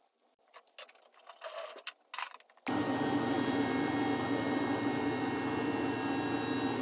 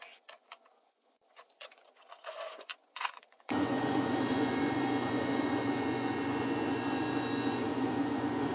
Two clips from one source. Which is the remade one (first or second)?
second